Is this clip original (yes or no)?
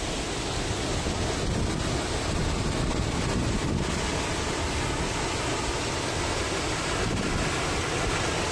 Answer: yes